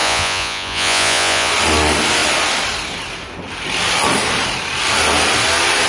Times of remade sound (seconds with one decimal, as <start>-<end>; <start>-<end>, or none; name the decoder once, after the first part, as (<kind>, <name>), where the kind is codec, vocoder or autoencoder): 0.0-1.5 (vocoder, Vocos)